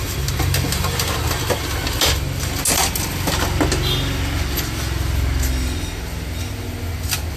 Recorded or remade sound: recorded